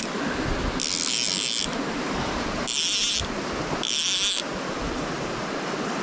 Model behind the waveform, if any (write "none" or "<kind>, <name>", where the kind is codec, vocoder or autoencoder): none